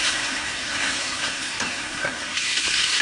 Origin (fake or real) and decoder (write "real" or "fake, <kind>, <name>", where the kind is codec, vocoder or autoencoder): fake, codec, SNAC